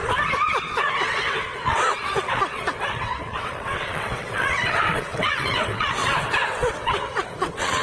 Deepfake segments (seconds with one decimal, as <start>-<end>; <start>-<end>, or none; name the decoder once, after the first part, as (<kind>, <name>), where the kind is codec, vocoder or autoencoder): 0.8-7.8 (vocoder, WaveNeXt)